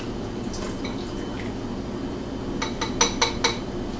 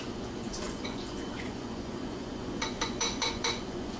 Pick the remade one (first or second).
second